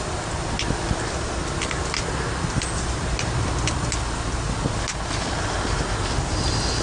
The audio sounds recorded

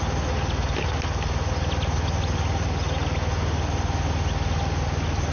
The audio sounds recorded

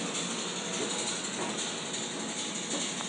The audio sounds recorded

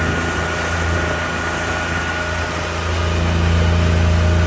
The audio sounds recorded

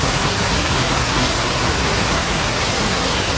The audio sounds remade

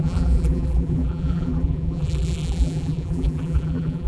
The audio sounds remade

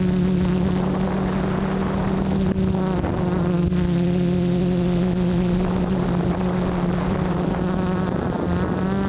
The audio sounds recorded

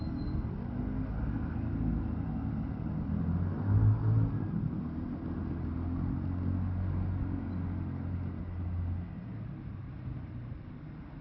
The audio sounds recorded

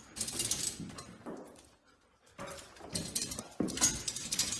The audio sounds recorded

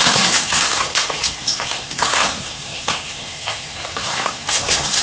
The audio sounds remade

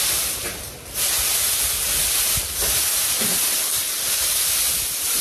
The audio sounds recorded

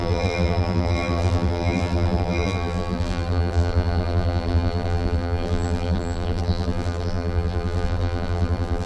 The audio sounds remade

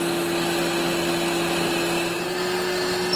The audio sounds recorded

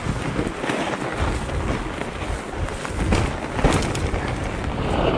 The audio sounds recorded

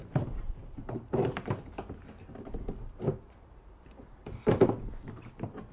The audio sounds remade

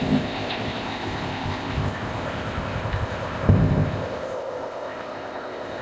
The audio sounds remade